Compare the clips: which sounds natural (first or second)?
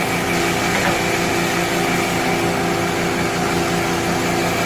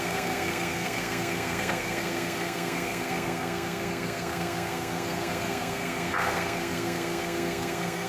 first